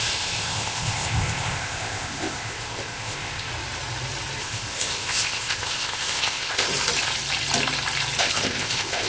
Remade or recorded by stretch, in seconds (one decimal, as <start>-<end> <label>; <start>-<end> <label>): 0.0-3.5 remade; 3.5-4.4 recorded; 4.4-6.7 remade; 6.7-8.2 recorded; 8.2-9.1 remade